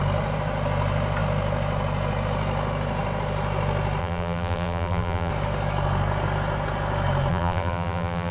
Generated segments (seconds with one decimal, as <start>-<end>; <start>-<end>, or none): 4.0-5.3; 7.3-8.3